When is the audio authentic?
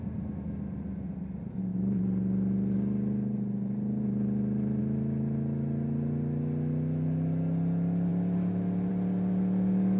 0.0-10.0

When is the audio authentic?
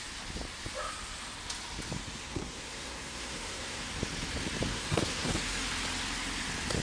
0.0-2.2; 3.9-4.7; 5.5-6.8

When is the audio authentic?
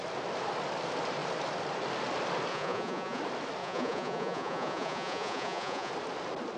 0.0-2.5; 3.2-3.6; 5.9-6.6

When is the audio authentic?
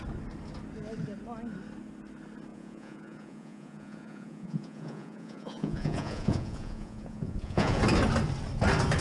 0.0-2.5; 7.8-9.0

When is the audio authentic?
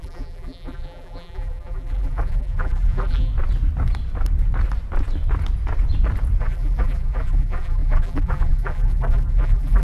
3.3-6.4